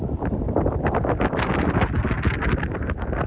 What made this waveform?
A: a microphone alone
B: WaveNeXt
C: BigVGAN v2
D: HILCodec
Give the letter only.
A